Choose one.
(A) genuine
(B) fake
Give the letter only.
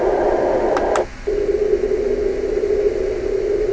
A